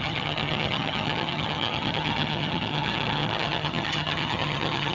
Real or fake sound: fake